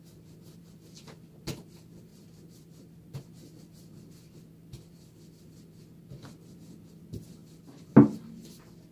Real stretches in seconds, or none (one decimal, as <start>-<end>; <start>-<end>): 0.0-2.1; 3.3-8.9